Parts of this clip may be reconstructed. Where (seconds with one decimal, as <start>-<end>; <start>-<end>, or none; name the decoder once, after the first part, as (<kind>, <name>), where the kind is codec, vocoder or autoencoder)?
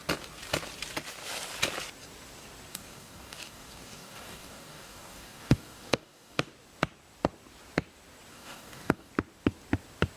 2.7-6.5 (codec, DAC); 8.3-9.1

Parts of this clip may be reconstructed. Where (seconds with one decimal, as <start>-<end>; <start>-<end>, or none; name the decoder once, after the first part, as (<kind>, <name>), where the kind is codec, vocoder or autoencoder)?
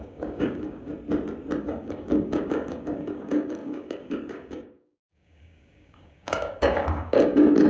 0.0-0.9 (codec, DAC); 1.6-7.7